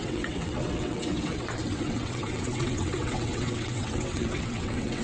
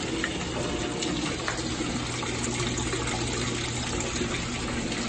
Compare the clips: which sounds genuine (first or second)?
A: second